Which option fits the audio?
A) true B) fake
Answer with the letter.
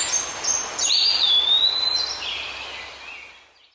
A